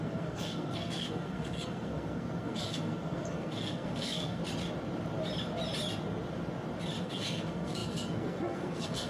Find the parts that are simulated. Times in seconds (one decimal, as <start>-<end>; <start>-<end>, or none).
0.0-4.4; 7.0-9.1